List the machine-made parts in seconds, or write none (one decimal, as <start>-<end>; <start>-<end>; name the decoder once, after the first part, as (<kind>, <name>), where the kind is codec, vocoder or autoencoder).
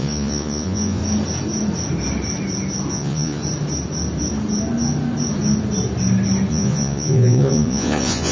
0.0-1.0 (vocoder, Vocos); 2.9-3.4; 6.5-8.3